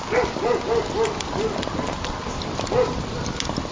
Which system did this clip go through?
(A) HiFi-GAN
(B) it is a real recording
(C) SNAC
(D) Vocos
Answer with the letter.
B